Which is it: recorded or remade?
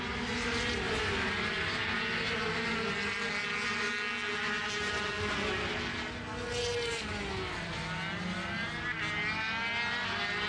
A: recorded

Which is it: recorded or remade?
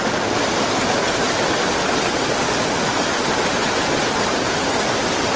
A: recorded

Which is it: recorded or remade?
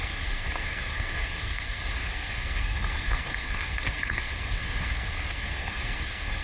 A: remade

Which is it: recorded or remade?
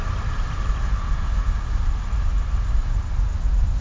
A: recorded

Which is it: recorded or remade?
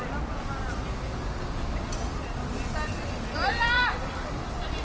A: recorded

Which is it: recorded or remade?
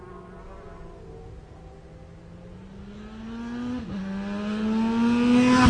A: recorded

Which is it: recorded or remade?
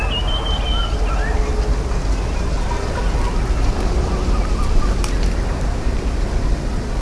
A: recorded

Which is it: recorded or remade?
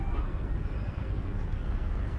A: remade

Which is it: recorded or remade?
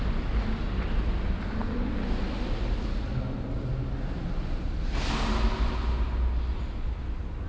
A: recorded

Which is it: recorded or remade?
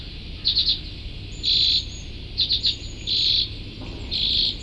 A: recorded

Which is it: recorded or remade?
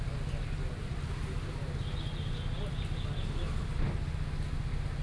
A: recorded